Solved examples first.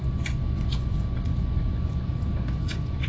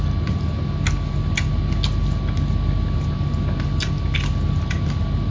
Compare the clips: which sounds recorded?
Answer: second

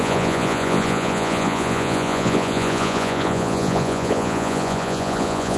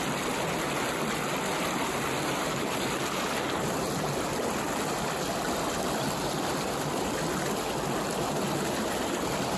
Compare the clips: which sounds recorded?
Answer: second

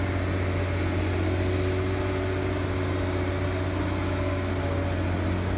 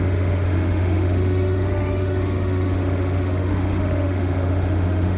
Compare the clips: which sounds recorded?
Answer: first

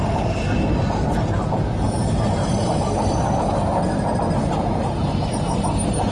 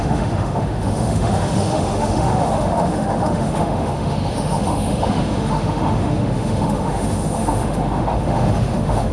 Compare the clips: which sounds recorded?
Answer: first